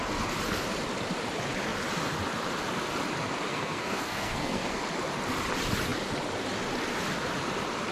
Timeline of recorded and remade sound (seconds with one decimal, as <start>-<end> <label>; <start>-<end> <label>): 0.0-3.5 recorded; 3.5-4.8 remade; 4.8-7.9 recorded